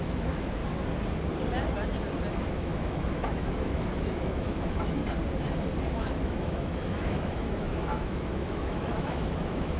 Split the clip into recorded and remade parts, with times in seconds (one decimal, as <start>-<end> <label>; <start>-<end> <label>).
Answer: 0.0-0.6 remade; 0.6-2.4 recorded; 2.4-5.0 remade; 5.0-5.9 recorded; 5.9-9.8 remade